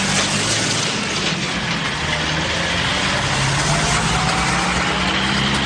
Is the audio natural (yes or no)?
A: yes